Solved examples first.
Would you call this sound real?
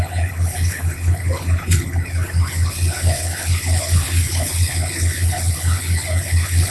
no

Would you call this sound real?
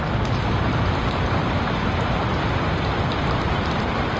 yes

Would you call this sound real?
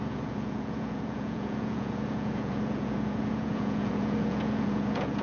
no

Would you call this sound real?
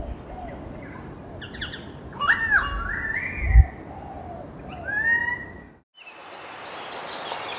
yes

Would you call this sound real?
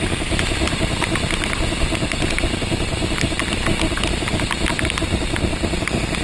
yes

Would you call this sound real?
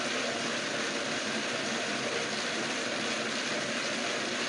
yes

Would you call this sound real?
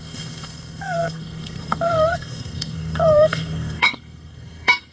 no